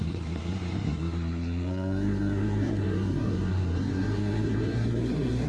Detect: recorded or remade remade